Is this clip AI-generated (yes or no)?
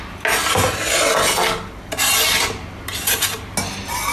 no